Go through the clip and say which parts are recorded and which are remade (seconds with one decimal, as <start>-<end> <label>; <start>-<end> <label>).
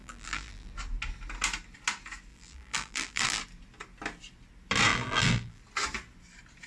0.0-0.7 remade; 0.7-2.3 recorded; 2.3-3.4 remade; 3.4-4.9 recorded; 4.9-5.6 remade; 5.6-6.7 recorded